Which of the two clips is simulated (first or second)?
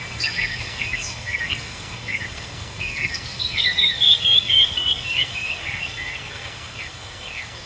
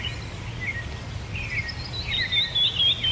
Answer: first